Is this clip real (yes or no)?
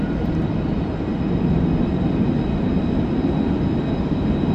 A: yes